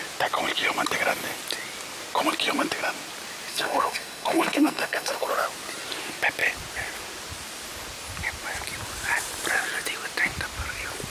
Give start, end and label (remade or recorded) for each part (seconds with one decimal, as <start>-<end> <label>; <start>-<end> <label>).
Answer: 0.0-3.5 recorded; 3.5-5.3 remade; 5.3-11.1 recorded